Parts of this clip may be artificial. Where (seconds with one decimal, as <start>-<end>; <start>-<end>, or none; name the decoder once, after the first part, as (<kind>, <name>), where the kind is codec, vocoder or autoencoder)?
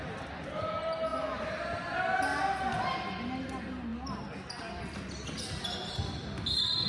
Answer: none